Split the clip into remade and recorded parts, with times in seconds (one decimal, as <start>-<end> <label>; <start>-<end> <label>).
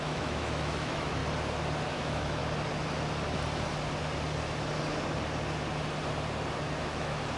0.0-1.2 remade; 1.2-1.9 recorded; 1.9-2.4 remade; 2.4-6.8 recorded; 6.8-7.4 remade